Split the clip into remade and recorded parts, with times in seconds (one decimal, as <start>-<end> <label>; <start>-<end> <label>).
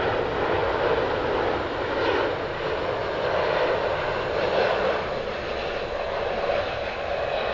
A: 0.0-7.5 recorded